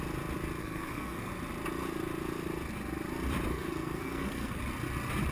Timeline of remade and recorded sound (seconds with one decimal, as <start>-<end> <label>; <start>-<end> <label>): 0.0-0.6 recorded; 0.6-1.3 remade; 1.3-3.5 recorded; 3.5-4.6 remade; 4.6-5.3 recorded